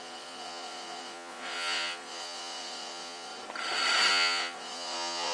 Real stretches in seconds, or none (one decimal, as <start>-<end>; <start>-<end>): 3.3-4.1